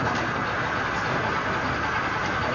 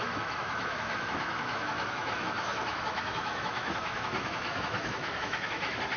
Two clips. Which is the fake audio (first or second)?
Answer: second